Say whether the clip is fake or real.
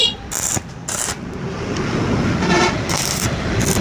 real